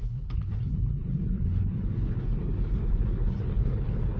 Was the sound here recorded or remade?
remade